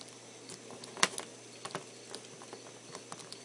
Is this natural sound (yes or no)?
yes